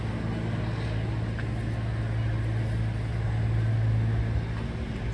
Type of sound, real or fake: real